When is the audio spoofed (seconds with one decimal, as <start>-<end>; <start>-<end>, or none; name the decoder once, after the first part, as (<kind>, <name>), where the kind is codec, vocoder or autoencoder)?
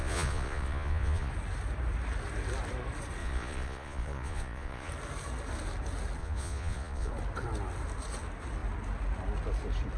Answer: 0.0-1.3 (vocoder, Vocos); 3.2-4.9; 6.2-7.1